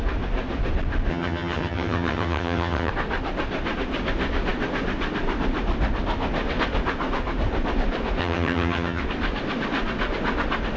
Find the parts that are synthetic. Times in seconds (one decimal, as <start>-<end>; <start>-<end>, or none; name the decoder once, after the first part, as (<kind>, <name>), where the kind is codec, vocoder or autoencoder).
1.1-2.9 (vocoder, HiFi-GAN); 8.2-9.0